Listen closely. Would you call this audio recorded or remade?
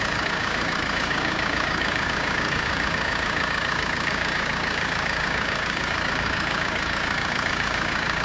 remade